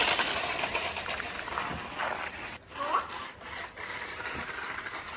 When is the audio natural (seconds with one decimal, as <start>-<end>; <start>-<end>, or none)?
0.0-5.2